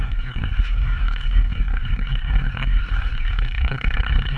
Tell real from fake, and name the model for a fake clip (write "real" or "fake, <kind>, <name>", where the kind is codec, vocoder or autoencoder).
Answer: fake, codec, SNAC